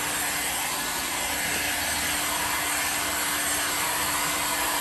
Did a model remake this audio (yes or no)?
no